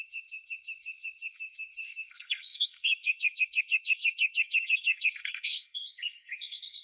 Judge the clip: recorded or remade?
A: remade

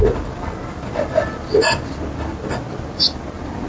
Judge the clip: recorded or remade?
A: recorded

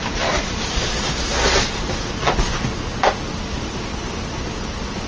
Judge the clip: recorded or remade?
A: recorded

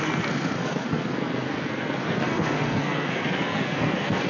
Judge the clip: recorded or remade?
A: remade